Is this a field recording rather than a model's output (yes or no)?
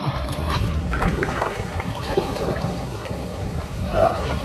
no